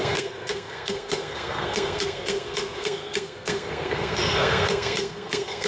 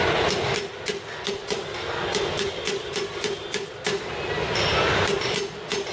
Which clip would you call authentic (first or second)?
second